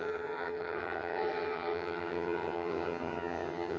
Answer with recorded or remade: remade